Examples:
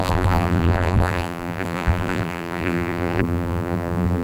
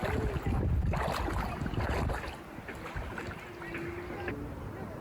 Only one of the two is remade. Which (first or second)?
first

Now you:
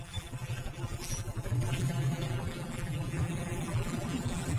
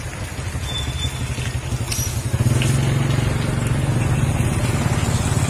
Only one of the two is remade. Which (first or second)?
first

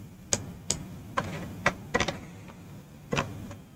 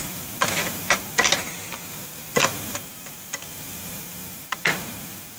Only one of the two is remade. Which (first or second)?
second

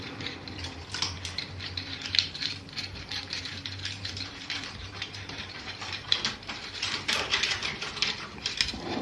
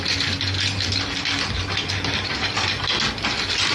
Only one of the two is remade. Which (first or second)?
first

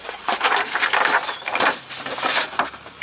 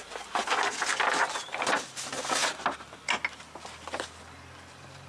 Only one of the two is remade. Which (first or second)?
first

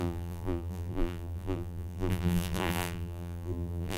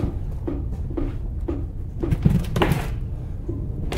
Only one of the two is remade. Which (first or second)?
first